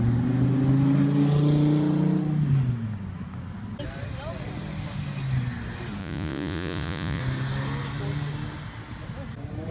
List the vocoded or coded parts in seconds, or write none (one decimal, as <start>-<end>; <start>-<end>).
6.0-7.2